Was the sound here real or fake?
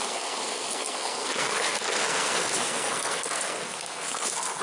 fake